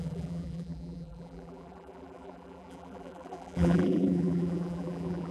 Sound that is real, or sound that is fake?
fake